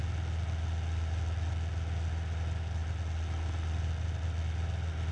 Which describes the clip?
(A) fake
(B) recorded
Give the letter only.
B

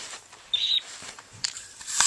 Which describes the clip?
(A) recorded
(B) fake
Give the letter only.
B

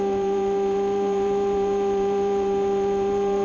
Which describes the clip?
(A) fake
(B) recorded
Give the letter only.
A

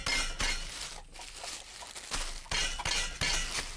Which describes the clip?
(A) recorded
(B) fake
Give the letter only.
A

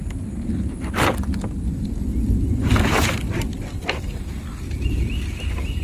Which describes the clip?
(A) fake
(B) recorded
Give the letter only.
B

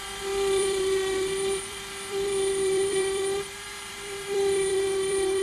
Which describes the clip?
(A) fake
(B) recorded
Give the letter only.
A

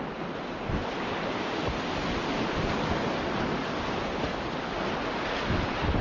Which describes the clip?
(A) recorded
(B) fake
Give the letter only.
A